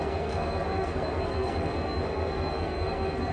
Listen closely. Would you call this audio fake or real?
fake